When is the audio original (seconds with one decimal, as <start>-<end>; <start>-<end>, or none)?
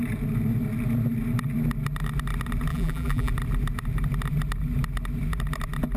0.0-2.7; 3.3-6.0